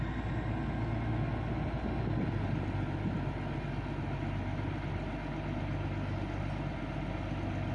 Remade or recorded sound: recorded